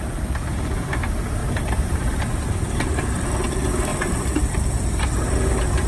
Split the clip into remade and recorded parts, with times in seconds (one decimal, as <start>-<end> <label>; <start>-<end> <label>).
0.0-1.4 recorded; 1.4-2.2 remade; 2.2-3.9 recorded; 3.9-5.1 remade; 5.1-5.9 recorded